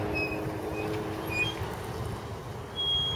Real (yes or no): yes